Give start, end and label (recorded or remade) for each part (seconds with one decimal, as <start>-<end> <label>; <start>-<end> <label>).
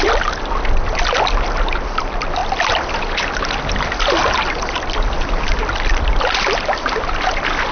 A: 0.0-7.7 recorded